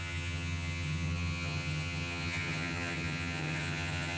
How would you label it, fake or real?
fake